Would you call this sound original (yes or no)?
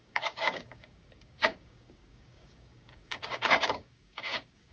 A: no